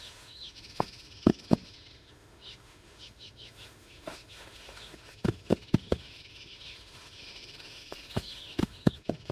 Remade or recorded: remade